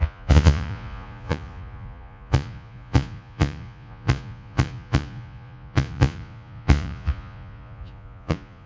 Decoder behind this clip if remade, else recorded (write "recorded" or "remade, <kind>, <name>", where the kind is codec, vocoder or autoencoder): remade, vocoder, Vocos